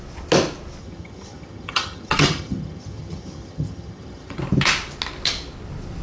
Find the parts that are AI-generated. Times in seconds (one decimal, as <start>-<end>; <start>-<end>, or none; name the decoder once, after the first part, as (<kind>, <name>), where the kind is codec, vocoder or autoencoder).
0.8-4.4 (vocoder, HiFi-GAN)

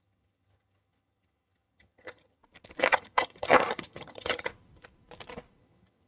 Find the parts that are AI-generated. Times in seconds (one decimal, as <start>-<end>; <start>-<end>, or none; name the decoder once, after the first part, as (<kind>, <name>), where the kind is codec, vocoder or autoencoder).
0.0-2.4 (vocoder, HiFi-GAN); 2.9-4.5; 5.6-6.1

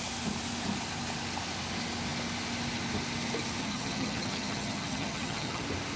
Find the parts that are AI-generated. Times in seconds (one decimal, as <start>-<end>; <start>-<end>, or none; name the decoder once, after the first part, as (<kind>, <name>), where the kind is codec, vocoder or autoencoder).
3.6-5.6 (vocoder, HiFi-GAN)

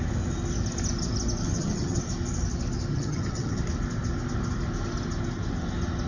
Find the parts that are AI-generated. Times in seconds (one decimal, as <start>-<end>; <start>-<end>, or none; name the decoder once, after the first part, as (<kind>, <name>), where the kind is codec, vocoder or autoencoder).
1.4-2.0 (vocoder, HiFi-GAN); 2.9-3.6

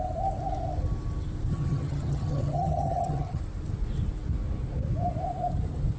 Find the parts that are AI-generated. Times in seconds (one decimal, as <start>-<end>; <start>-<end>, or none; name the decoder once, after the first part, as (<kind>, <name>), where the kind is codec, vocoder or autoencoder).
1.5-3.4 (vocoder, HiFi-GAN)

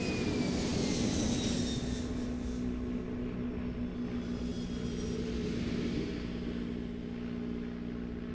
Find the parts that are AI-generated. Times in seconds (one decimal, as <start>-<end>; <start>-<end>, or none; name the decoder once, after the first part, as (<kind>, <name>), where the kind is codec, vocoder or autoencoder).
none

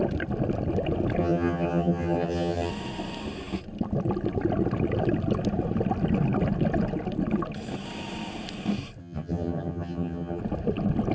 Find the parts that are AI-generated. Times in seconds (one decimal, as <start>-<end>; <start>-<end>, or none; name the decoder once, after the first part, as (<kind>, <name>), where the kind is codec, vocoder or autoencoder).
1.2-2.7 (vocoder, HiFi-GAN); 9.0-10.4